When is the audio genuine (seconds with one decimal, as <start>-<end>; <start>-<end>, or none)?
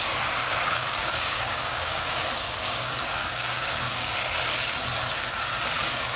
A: 0.0-0.4; 2.2-3.2; 4.1-6.2